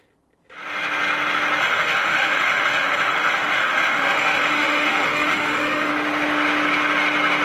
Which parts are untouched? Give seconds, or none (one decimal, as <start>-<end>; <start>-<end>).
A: 0.0-1.6; 5.9-7.4